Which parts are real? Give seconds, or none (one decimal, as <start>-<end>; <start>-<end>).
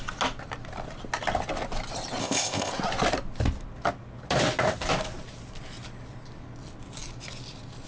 0.0-2.2; 2.7-7.9